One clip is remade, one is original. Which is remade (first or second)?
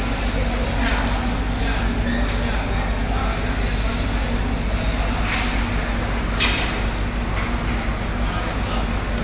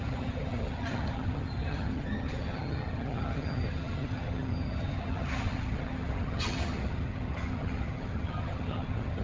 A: second